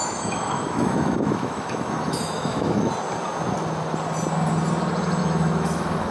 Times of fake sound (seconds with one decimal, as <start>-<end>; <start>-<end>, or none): 0.0-2.9; 5.2-6.1